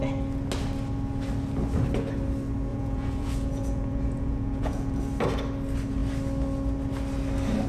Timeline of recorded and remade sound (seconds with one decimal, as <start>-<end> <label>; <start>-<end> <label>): 0.0-2.7 recorded; 2.7-5.0 remade; 5.0-7.7 recorded